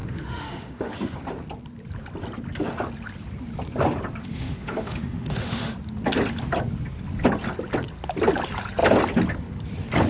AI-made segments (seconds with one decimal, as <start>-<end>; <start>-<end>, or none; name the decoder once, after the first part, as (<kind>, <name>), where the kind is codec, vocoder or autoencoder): 0.0-0.9 (autoencoder, DAC-VAE); 4.2-5.7